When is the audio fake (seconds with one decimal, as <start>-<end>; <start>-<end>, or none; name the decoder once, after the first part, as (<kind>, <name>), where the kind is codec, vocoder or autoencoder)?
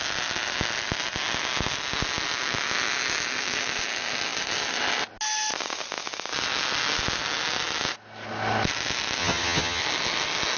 9.2-9.8 (vocoder, HiFi-GAN)